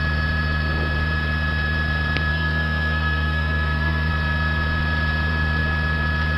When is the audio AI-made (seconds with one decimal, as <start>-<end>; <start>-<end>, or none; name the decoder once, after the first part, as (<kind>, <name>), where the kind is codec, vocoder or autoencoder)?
2.3-4.1 (codec, SNAC)